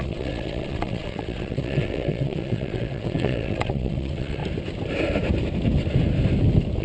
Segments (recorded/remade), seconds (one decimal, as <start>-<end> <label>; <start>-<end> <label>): 0.0-4.4 remade; 4.4-6.8 recorded